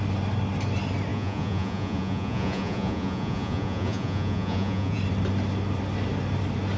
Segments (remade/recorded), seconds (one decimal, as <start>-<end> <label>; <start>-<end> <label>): 0.0-1.1 recorded; 1.1-5.0 remade; 5.0-6.8 recorded